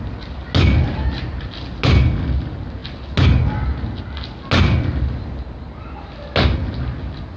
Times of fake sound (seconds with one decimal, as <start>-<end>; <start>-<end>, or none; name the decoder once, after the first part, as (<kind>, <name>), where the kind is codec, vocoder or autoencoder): none